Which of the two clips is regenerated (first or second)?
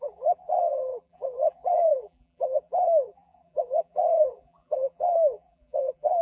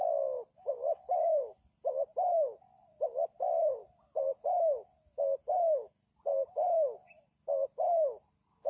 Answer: first